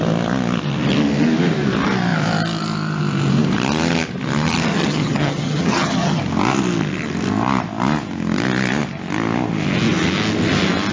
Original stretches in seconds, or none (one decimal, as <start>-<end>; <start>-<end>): 0.0-4.7; 6.2-10.9